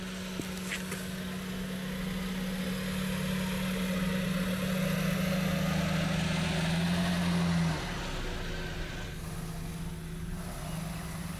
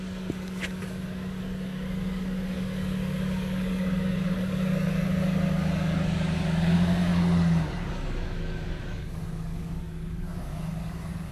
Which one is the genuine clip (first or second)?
first